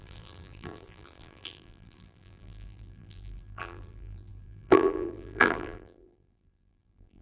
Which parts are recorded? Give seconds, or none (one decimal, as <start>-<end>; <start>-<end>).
none